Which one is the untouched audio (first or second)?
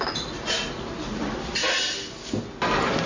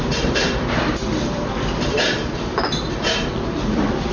first